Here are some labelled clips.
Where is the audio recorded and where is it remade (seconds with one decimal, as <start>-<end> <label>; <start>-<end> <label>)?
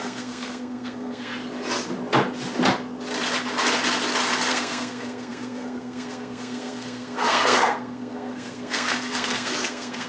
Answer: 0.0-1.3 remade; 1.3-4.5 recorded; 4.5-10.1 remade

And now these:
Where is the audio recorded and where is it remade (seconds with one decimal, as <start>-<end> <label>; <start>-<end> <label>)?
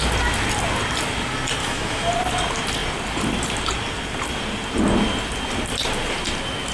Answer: 0.0-1.6 recorded; 1.6-2.1 remade; 2.1-6.7 recorded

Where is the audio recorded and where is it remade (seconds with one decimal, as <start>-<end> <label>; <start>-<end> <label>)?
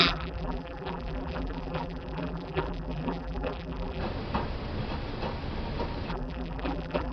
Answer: 0.0-4.0 remade; 4.0-6.1 recorded; 6.1-7.1 remade